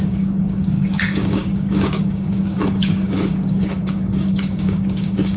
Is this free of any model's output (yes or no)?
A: no